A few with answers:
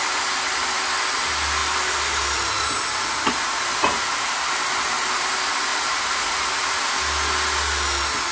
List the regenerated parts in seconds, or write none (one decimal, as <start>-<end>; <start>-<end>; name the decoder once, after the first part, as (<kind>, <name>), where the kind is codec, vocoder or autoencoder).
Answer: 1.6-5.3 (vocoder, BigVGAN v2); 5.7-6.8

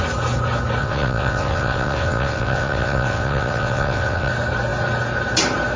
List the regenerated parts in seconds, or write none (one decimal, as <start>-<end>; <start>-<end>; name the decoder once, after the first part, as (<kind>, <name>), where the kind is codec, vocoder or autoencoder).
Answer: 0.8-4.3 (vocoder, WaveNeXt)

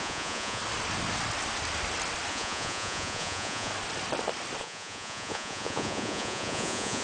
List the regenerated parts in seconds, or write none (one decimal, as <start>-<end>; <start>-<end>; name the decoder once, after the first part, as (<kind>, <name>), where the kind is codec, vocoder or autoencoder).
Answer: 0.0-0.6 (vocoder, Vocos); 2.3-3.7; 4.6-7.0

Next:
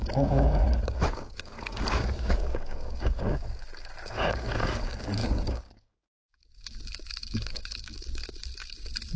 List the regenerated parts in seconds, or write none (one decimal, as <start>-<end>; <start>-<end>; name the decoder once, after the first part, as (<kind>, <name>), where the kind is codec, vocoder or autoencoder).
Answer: 0.0-9.2 (codec, DAC)

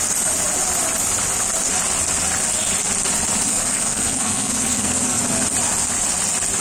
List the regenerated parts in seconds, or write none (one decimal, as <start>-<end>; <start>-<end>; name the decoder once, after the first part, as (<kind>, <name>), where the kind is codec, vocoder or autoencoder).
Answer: 3.5-5.2 (codec, SNAC)

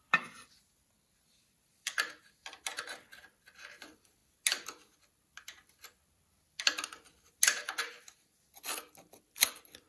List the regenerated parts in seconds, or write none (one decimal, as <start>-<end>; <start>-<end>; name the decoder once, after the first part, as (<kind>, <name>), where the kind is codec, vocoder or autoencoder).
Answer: none